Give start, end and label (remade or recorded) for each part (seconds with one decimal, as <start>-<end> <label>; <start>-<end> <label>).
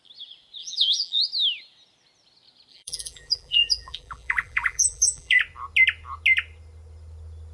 0.0-0.6 recorded; 0.6-1.2 remade; 1.2-2.7 recorded; 2.7-5.4 remade; 5.4-7.5 recorded